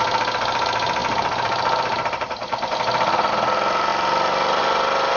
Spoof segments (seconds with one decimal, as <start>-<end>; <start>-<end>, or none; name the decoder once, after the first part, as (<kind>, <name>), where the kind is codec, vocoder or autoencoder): none